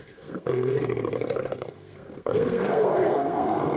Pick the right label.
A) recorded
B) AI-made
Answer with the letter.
B